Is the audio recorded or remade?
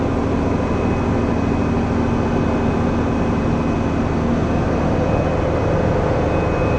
recorded